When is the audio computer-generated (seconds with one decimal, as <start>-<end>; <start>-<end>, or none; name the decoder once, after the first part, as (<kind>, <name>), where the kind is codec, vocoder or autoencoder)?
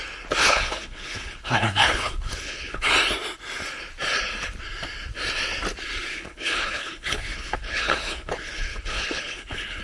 0.4-2.9 (codec, HILCodec); 6.1-9.8